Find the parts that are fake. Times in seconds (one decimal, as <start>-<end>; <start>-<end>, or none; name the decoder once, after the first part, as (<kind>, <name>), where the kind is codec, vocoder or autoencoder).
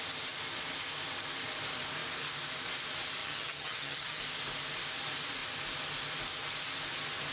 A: 3.2-4.2 (vocoder, HiFi-GAN)